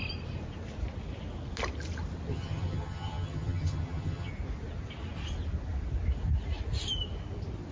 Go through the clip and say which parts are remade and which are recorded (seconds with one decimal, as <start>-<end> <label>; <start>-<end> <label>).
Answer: 0.0-2.3 recorded; 2.3-4.3 remade; 4.3-7.7 recorded

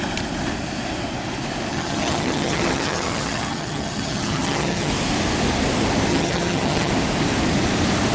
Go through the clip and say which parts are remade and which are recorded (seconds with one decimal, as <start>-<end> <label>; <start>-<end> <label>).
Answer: 0.0-1.7 recorded; 1.7-4.9 remade; 4.9-6.1 recorded; 6.1-6.9 remade; 6.9-8.1 recorded

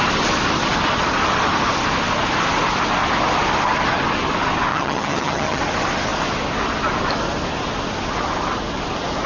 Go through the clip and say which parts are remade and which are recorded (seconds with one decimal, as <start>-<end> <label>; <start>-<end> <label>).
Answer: 0.0-4.7 recorded; 4.7-5.6 remade; 5.6-9.3 recorded

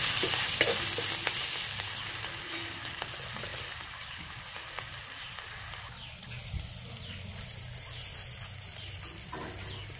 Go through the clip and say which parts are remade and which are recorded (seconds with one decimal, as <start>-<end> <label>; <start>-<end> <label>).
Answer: 0.0-10.0 recorded

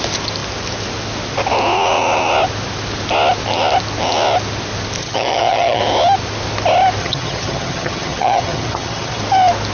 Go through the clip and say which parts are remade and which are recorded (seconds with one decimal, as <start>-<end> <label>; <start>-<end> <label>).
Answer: 0.0-5.0 recorded; 5.0-5.8 remade; 5.8-7.0 recorded; 7.0-9.2 remade; 9.2-9.7 recorded

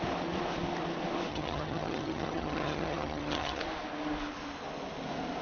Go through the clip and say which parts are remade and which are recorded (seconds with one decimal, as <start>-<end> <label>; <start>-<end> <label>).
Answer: 0.0-1.3 recorded; 1.3-3.6 remade; 3.6-5.4 recorded

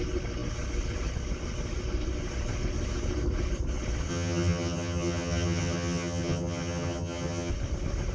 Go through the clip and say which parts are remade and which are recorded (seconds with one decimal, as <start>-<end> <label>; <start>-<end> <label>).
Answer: 0.0-4.1 recorded; 4.1-7.5 remade; 7.5-8.1 recorded